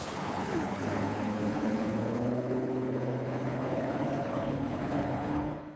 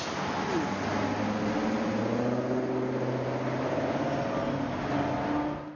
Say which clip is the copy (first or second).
first